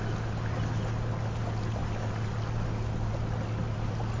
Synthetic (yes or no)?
no